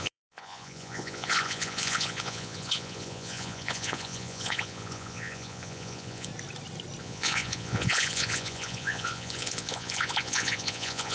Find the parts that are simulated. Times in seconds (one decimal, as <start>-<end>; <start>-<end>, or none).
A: 0.0-6.3; 7.0-11.1